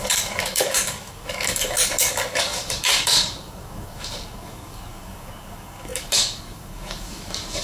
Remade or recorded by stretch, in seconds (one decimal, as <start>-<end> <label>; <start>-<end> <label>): 0.0-7.6 remade